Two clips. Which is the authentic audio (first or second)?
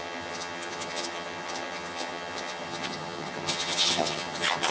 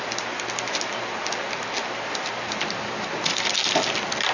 second